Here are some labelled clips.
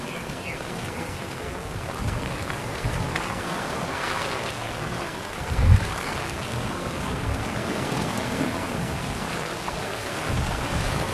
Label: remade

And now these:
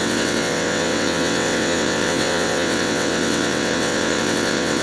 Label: remade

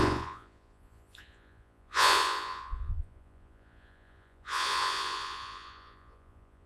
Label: remade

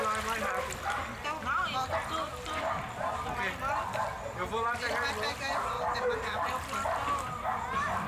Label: recorded